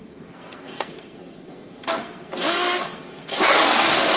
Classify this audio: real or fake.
fake